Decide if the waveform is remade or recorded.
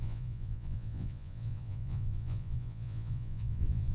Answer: remade